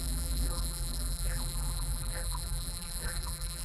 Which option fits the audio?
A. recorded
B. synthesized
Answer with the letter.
B